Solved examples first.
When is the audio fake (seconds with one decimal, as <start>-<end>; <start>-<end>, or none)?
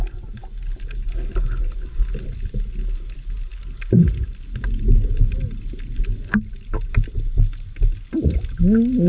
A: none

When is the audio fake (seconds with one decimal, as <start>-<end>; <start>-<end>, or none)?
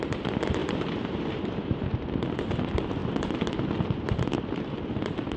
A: 0.6-2.0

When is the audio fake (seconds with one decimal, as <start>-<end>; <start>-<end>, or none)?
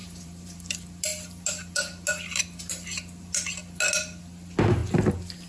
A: 0.0-0.7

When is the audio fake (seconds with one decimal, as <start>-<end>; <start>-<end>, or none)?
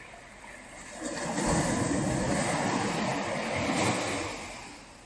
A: 3.1-3.8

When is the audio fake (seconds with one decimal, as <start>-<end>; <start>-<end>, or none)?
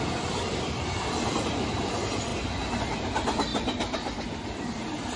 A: 0.0-2.3; 2.8-5.2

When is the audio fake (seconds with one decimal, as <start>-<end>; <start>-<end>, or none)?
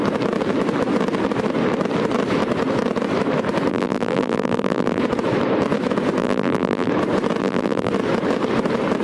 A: 3.7-5.0; 6.2-6.9; 7.4-7.9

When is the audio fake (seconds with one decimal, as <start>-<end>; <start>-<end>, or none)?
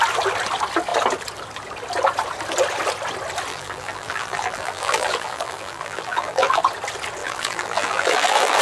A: 3.5-6.6; 7.2-8.6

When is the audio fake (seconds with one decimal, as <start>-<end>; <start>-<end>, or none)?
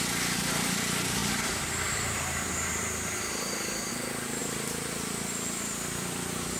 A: 4.4-6.6